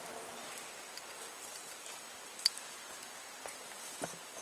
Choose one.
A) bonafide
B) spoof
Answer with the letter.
A